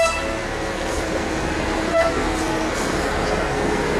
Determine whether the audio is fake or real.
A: fake